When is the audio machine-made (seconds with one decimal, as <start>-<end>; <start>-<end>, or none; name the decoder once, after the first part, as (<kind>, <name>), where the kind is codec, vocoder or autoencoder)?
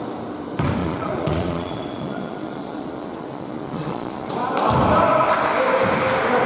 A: 0.8-4.3 (vocoder, Vocos)